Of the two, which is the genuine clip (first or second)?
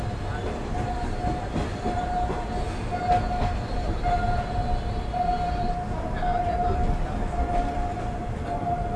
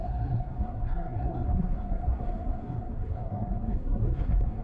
first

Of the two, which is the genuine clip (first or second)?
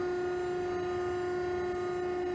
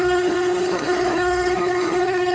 first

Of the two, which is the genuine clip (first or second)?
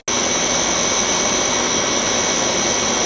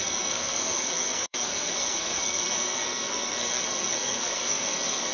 first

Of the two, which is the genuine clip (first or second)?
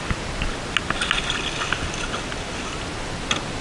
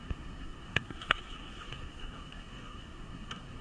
first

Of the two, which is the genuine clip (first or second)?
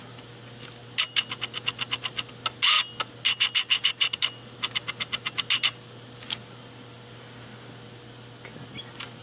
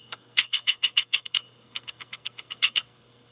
first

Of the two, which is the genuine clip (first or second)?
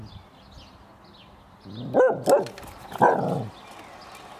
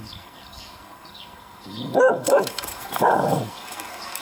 first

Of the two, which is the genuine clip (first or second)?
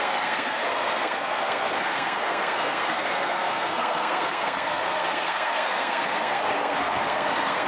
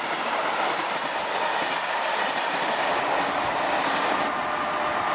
second